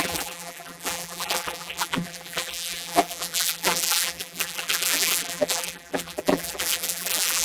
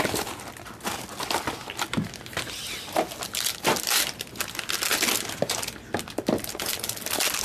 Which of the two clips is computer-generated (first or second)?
first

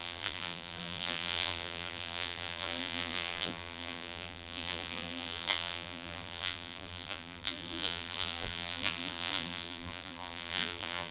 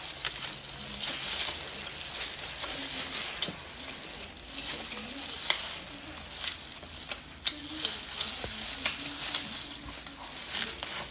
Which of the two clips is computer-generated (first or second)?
first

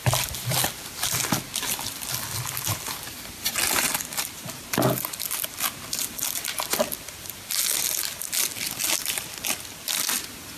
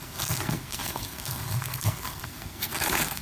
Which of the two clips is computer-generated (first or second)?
second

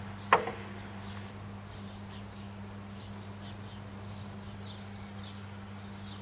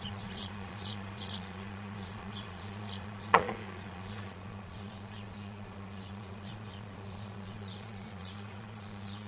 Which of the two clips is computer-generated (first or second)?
second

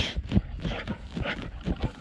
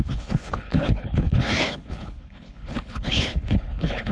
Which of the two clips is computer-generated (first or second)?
second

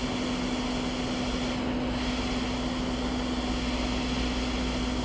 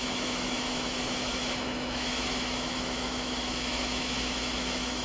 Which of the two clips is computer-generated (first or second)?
second